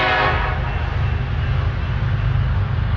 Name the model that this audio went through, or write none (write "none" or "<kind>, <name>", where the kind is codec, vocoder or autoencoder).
none